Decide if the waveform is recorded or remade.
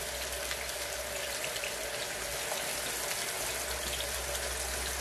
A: recorded